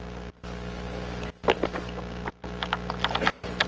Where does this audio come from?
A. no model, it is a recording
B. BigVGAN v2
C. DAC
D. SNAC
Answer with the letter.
A